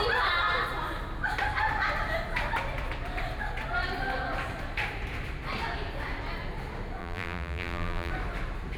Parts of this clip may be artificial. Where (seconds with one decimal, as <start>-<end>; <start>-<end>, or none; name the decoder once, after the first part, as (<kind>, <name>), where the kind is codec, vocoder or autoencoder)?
7.0-8.1 (vocoder, BigVGAN v2)